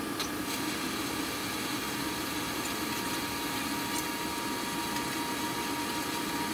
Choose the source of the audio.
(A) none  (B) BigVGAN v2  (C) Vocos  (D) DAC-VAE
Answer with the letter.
A